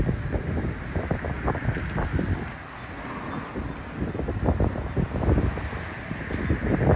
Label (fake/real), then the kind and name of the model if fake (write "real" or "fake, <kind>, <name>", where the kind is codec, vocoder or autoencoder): real